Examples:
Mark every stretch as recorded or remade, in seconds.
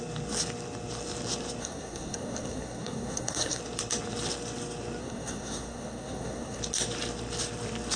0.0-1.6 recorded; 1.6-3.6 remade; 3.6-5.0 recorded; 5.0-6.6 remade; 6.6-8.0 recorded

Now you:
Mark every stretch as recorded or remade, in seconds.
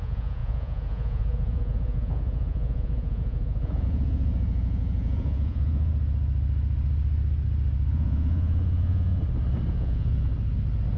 0.0-5.9 remade; 5.9-7.9 recorded; 7.9-9.2 remade; 9.2-9.7 recorded; 9.7-10.3 remade; 10.3-11.0 recorded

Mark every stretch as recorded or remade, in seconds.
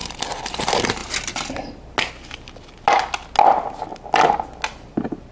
0.0-0.6 remade; 0.6-5.3 recorded